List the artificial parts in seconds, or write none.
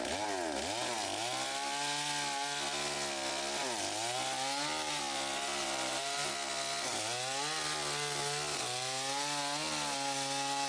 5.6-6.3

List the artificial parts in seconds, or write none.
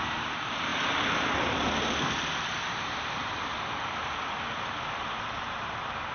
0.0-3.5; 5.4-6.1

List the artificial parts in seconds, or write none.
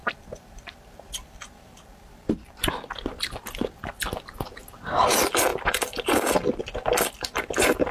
0.0-2.7; 5.5-6.6